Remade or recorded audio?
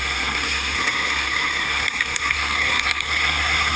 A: remade